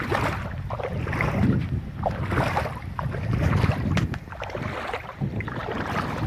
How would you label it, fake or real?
real